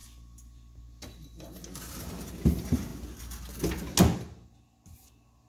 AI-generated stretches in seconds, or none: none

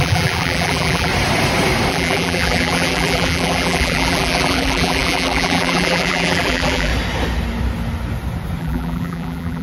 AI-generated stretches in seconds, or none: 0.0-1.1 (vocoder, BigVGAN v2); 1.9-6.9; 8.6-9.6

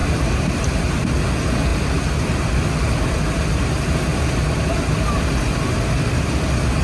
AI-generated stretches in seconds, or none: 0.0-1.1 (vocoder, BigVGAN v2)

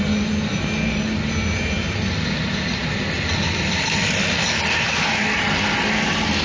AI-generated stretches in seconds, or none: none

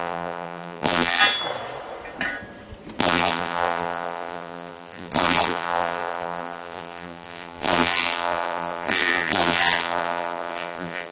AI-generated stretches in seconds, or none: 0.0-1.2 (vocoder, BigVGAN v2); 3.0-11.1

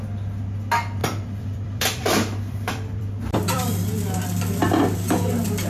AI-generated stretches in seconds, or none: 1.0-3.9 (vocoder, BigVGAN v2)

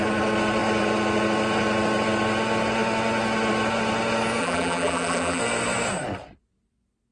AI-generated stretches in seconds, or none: 4.4-5.4 (vocoder, BigVGAN v2)

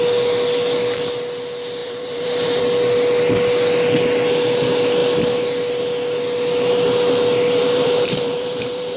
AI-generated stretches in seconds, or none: 1.8-2.6 (vocoder, BigVGAN v2); 7.6-9.0